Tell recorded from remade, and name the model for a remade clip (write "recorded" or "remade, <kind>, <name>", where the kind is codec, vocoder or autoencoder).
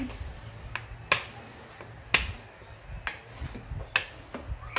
recorded